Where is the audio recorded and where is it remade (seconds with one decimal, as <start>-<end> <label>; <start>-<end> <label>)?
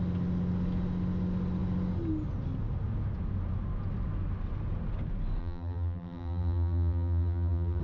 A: 0.0-5.4 recorded; 5.4-7.8 remade